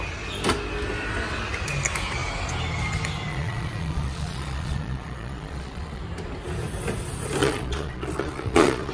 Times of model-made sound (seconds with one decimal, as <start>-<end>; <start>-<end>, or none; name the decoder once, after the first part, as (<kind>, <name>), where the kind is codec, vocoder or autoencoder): 3.3-6.0 (vocoder, Vocos); 7.4-8.9